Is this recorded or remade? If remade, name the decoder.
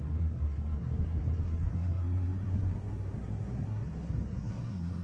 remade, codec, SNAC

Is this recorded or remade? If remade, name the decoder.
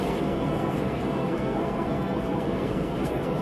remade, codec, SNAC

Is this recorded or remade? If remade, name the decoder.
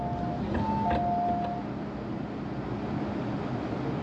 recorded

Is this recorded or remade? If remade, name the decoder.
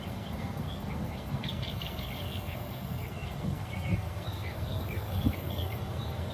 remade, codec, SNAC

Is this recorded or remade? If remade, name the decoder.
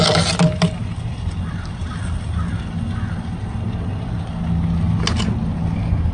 recorded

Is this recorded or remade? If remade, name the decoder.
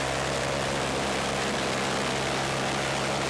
recorded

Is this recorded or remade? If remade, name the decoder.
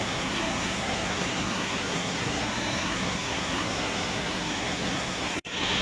remade, codec, SNAC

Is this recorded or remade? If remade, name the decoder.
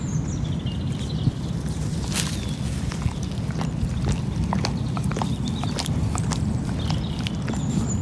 recorded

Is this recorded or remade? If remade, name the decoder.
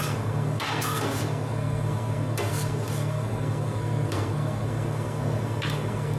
remade, codec, SNAC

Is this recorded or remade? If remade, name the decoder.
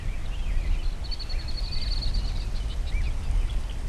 recorded